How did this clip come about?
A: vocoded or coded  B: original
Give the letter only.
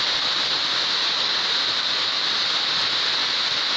B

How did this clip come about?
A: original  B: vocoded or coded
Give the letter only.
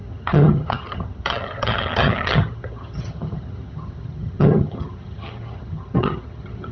B